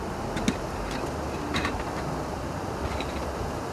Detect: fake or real fake